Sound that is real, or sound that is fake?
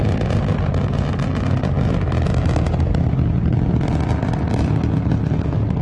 real